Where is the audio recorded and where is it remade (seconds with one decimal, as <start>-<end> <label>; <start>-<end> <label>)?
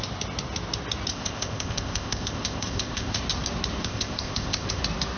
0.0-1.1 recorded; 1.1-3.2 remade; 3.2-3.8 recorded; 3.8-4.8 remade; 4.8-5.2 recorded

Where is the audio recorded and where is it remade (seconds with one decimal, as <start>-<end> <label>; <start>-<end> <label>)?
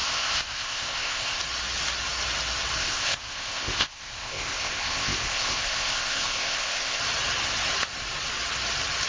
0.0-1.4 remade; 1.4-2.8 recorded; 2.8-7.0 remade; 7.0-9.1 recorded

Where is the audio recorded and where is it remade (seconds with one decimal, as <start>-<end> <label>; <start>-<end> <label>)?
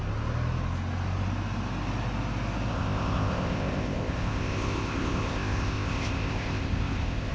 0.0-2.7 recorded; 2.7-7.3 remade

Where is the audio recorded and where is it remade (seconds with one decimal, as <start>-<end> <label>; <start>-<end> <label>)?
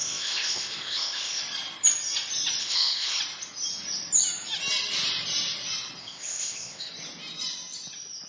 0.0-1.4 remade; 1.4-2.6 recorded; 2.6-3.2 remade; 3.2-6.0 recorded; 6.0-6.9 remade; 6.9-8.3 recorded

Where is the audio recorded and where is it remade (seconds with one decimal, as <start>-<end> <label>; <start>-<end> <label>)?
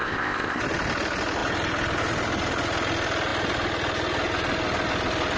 0.0-0.6 remade; 0.6-5.4 recorded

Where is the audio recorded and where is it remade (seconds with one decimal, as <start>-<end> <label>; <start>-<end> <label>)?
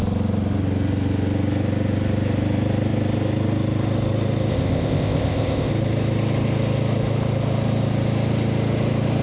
0.0-4.5 recorded; 4.5-5.7 remade; 5.7-9.2 recorded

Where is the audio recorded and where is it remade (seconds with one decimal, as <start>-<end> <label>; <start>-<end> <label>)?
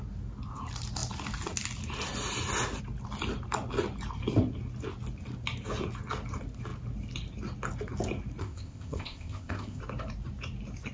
0.0-8.4 recorded; 8.4-9.8 remade; 9.8-10.9 recorded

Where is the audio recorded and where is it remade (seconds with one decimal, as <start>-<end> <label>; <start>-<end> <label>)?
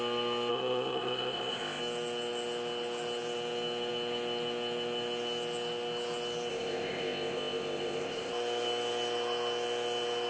0.0-0.5 recorded; 0.5-1.8 remade; 1.8-6.5 recorded; 6.5-8.3 remade; 8.3-10.3 recorded